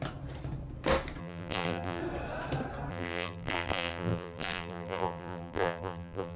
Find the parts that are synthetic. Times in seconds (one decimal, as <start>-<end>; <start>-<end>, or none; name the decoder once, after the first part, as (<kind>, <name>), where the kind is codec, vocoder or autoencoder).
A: 1.2-2.0 (vocoder, BigVGAN v2); 2.9-6.4